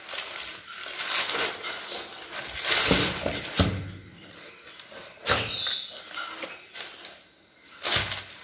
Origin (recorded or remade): recorded